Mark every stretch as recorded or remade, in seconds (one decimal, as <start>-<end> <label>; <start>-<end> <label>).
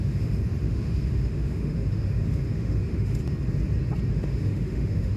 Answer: 0.0-3.2 remade; 3.2-4.1 recorded; 4.1-5.2 remade